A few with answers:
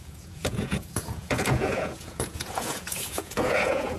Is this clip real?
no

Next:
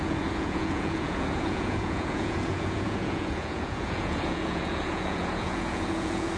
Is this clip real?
no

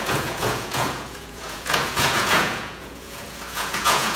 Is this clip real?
no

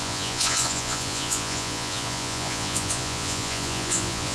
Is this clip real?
no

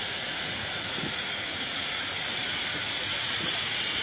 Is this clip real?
no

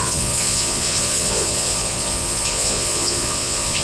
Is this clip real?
no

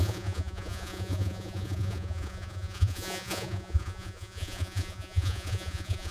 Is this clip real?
no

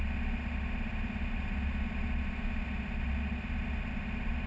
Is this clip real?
yes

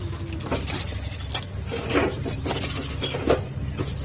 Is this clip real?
yes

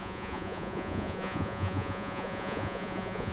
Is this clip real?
no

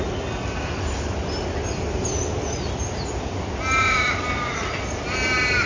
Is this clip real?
yes